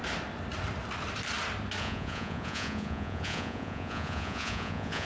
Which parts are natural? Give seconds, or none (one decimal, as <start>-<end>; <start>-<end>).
0.0-1.8